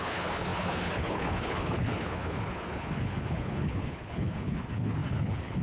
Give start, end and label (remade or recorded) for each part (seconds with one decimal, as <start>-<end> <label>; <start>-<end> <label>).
0.0-5.6 remade